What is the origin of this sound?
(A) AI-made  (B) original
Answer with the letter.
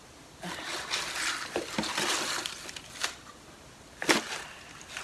B